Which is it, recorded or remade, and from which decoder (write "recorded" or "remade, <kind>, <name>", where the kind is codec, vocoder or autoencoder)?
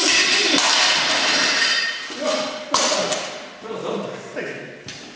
remade, vocoder, BigVGAN v2